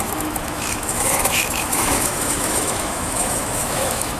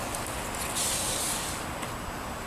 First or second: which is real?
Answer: second